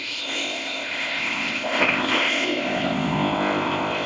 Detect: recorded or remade remade